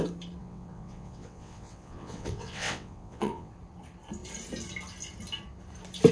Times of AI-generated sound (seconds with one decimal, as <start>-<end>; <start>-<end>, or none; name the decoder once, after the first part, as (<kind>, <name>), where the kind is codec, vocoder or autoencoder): 0.4-3.5 (vocoder, WaveNeXt)